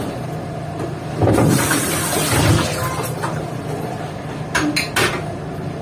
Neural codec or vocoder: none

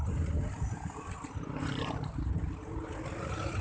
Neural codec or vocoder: none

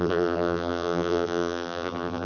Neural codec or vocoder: vocoder, BigVGAN v2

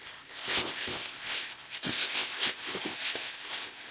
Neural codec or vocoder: codec, ZipCodec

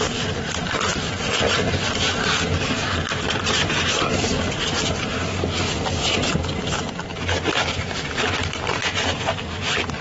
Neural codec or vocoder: vocoder, BigVGAN v2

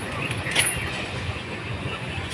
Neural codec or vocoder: vocoder, Vocos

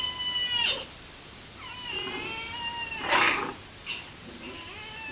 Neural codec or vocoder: none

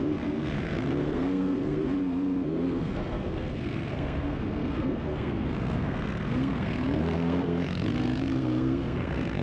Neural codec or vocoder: codec, SNAC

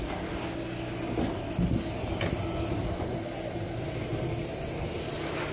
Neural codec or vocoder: none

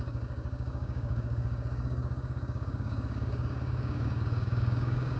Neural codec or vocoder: codec, DAC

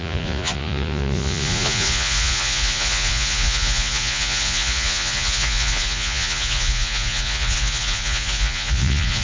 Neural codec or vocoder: vocoder, Vocos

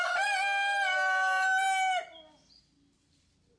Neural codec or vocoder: none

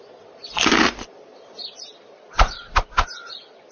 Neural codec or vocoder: none